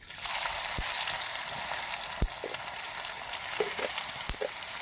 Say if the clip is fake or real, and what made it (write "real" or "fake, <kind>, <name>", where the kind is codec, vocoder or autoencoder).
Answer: real